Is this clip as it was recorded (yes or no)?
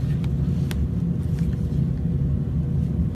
yes